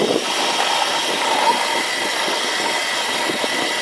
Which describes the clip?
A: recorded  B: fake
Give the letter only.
A